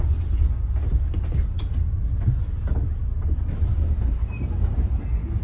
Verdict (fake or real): real